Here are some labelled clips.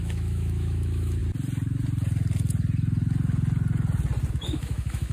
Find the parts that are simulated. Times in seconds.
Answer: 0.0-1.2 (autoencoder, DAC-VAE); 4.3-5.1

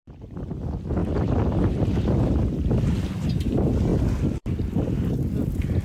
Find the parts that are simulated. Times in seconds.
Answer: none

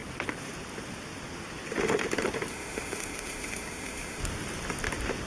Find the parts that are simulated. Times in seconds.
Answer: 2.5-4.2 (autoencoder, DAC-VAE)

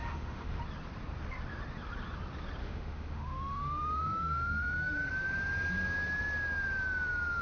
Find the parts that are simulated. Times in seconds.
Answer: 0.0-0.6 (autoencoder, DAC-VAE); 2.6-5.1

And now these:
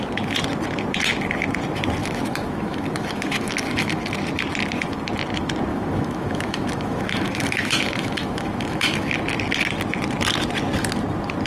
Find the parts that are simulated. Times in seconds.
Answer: 2.0-4.1 (autoencoder, DAC-VAE); 5.7-9.2